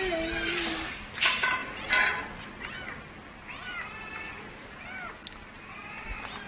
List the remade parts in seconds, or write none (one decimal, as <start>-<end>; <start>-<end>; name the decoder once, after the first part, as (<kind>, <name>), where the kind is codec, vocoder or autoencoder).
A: none